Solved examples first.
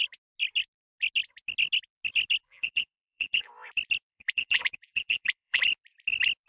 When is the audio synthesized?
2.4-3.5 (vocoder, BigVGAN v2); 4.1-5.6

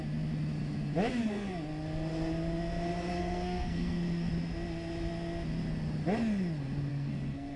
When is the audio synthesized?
3.1-4.3 (codec, SNAC); 6.9-7.6

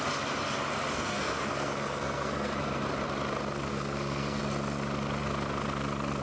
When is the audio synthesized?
0.9-2.8 (codec, SNAC); 3.7-4.4

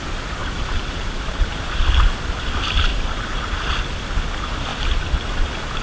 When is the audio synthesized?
0.4-1.8 (vocoder, BigVGAN v2); 2.9-3.7; 4.7-5.8

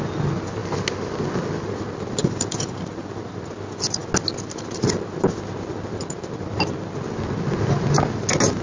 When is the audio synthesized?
2.2-3.5 (vocoder, BigVGAN v2)

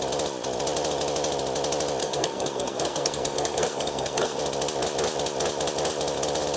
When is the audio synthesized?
2.0-4.4 (codec, SNAC)